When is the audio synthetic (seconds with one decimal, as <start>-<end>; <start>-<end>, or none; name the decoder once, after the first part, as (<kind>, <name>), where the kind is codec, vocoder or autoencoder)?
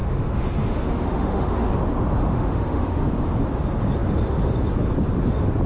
0.0-1.7 (autoencoder, DAC-VAE); 2.2-3.0